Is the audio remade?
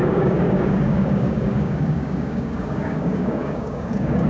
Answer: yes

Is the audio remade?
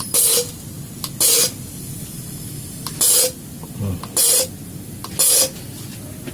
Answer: no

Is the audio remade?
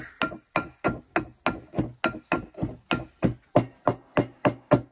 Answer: no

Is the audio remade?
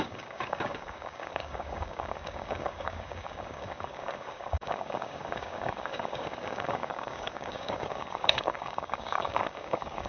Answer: yes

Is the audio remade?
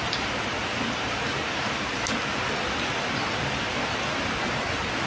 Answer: no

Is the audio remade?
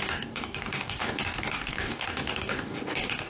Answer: yes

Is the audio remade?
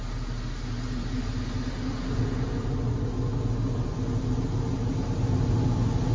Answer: no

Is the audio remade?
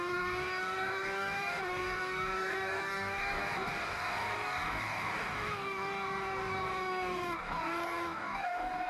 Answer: yes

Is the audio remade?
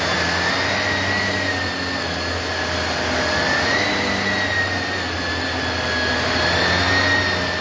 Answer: no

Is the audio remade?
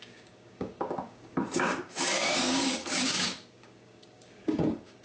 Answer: yes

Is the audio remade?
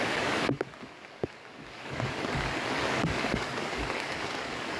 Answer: yes